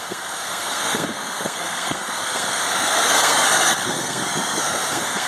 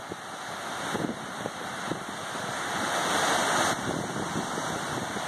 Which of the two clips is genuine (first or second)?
second